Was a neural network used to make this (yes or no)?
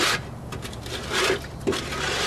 no